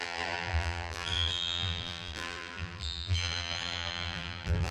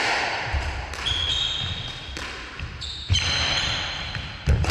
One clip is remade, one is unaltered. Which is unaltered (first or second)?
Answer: second